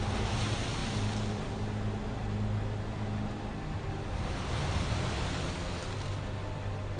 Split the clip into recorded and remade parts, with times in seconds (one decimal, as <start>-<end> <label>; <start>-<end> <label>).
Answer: 0.0-7.0 recorded